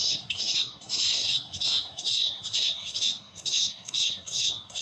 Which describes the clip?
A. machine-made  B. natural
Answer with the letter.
A